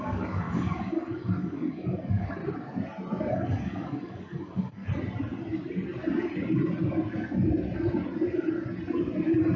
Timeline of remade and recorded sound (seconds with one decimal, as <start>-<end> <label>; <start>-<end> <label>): 0.0-2.4 remade; 2.4-3.3 recorded; 3.3-4.8 remade; 4.8-9.6 recorded